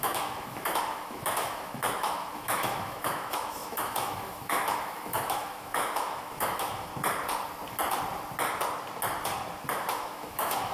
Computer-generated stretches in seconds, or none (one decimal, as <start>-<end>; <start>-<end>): 0.0-6.9; 9.7-10.7